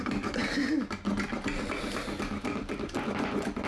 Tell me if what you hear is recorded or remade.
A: recorded